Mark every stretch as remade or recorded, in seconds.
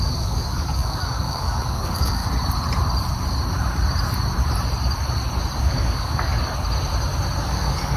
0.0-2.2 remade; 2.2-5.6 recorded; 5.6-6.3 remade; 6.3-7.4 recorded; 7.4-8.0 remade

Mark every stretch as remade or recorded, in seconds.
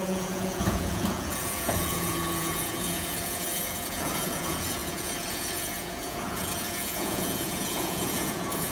0.0-8.7 remade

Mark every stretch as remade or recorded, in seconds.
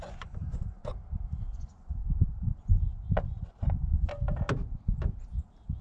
0.0-0.8 remade; 0.8-1.3 recorded; 1.3-2.0 remade; 2.0-2.6 recorded; 2.6-4.1 remade; 4.1-5.8 recorded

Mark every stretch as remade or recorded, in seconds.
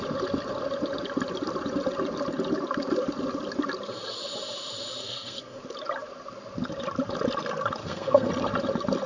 0.0-5.0 recorded; 5.0-5.6 remade; 5.6-7.8 recorded; 7.8-8.3 remade; 8.3-9.1 recorded